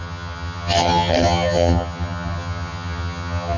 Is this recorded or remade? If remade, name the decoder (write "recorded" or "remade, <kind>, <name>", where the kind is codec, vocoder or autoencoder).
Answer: remade, vocoder, HiFi-GAN